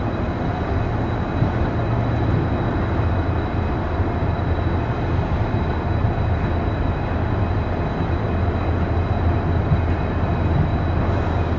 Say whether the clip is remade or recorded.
recorded